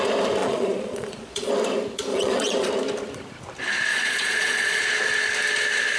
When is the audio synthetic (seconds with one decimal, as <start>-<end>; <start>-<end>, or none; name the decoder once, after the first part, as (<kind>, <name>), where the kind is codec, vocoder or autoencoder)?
0.4-1.5 (vocoder, Vocos); 2.1-2.7; 3.9-4.8